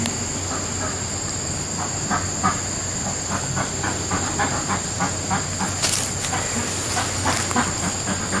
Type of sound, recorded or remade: recorded